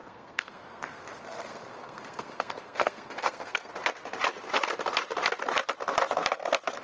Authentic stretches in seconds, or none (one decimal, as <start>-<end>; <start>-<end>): 3.7-6.8